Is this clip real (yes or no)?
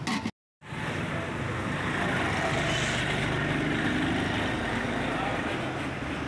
yes